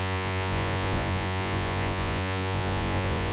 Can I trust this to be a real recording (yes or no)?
no